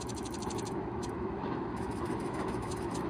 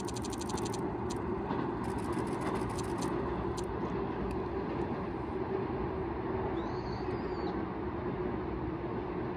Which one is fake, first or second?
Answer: first